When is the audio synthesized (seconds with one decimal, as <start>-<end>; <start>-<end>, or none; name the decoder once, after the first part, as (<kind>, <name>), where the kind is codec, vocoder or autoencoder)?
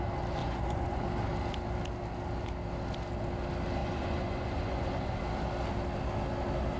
0.4-1.0 (vocoder, Vocos); 3.8-5.2